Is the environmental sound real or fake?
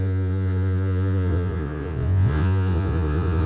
fake